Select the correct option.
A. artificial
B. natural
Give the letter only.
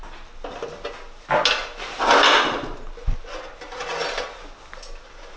B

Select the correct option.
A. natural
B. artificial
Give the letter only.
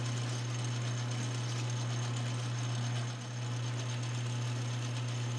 A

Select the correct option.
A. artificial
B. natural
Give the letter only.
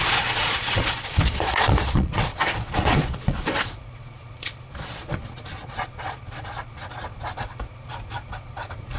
A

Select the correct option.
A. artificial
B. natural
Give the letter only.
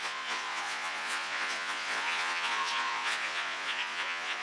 A